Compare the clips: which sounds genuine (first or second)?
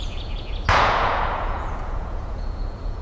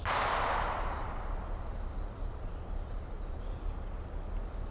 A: second